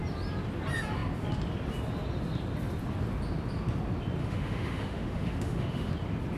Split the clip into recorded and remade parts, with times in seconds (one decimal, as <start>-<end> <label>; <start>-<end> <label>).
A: 0.0-4.2 recorded; 4.2-5.9 remade; 5.9-6.4 recorded